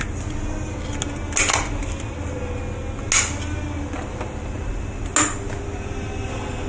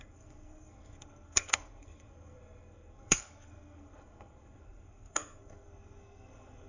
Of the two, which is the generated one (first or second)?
second